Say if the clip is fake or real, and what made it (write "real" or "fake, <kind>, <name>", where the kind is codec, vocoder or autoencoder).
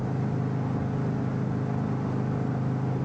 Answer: real